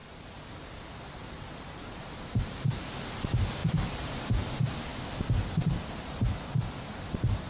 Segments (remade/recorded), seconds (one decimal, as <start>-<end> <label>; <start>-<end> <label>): 0.0-4.9 remade; 4.9-6.1 recorded; 6.1-7.5 remade